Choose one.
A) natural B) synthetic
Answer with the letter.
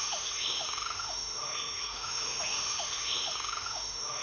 B